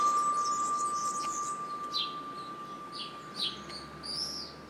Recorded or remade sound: recorded